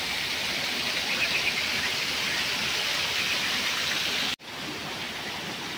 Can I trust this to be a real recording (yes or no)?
yes